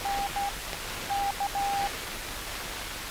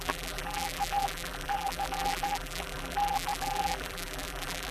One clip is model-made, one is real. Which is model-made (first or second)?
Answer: second